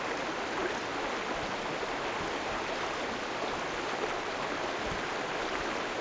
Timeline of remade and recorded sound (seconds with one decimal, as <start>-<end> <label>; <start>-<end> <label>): 0.0-6.0 recorded